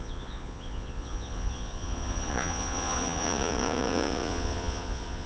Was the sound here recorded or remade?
remade